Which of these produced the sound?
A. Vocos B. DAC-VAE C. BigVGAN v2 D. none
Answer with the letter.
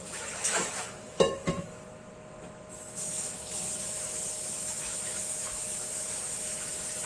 B